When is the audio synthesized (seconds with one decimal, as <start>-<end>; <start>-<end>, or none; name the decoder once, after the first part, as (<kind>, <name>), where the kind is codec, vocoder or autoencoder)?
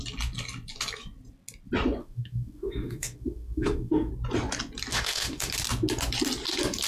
2.0-4.1 (autoencoder, DAC-VAE); 4.9-5.5